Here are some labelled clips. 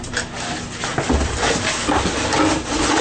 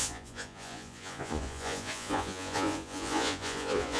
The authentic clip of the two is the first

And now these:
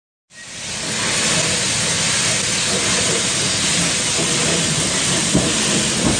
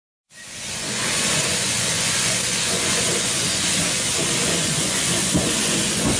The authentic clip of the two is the first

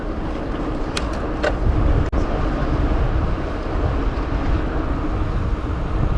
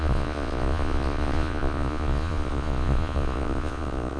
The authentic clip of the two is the first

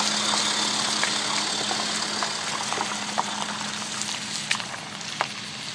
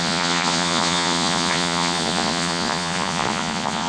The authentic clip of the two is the first